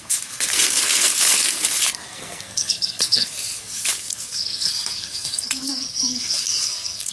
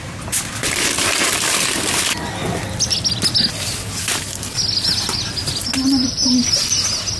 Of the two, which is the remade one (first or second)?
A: first